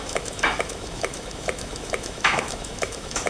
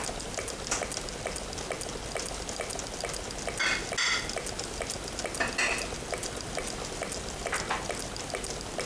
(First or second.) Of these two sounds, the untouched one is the second